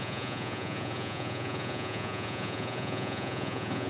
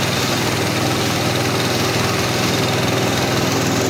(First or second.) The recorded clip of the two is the second